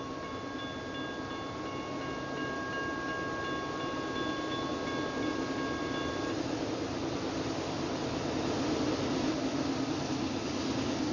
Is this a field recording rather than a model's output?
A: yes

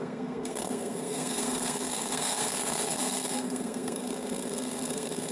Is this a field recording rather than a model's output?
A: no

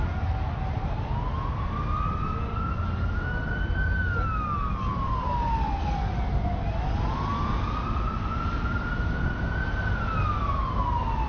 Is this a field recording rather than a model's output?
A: yes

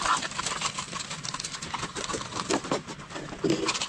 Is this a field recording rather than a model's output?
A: yes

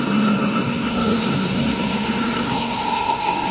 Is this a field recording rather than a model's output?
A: no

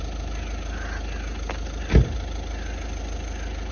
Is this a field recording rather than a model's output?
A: yes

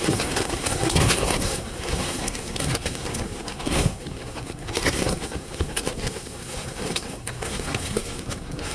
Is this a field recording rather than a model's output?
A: no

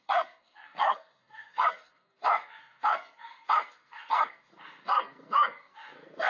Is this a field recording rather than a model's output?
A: no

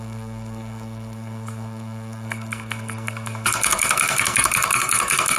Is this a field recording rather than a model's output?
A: no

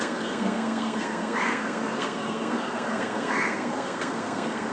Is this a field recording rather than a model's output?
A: no